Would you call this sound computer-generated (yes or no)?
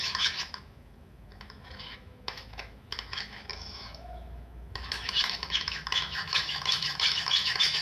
yes